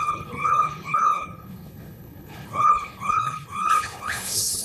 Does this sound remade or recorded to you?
remade